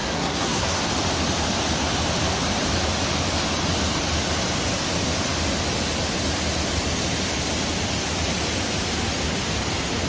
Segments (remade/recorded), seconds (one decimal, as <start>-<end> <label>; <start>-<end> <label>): 0.0-0.8 remade; 0.8-10.1 recorded

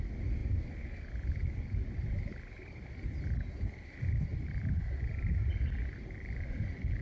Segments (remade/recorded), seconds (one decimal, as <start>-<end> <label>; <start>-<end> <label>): 0.0-7.0 recorded

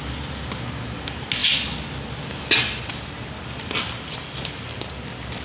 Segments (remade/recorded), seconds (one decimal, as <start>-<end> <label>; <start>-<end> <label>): 0.0-5.4 recorded

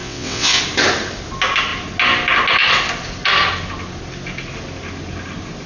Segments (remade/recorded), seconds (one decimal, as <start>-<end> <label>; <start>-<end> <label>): 0.0-0.6 remade; 0.6-5.7 recorded